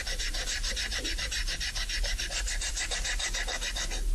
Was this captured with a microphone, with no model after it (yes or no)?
yes